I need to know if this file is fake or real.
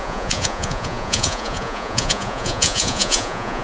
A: fake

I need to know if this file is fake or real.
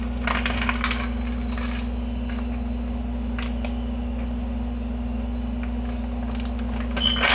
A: real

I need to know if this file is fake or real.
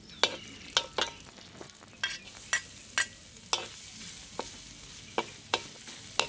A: real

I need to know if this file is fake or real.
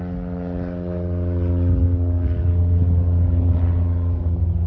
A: real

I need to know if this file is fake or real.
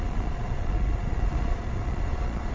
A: fake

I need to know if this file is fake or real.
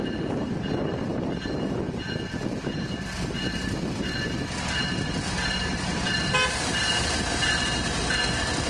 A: real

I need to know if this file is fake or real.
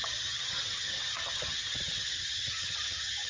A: fake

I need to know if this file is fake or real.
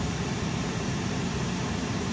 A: fake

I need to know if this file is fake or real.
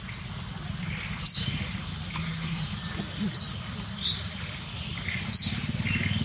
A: real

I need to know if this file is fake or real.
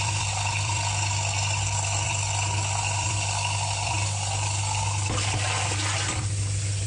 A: fake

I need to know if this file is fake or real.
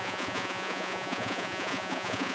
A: fake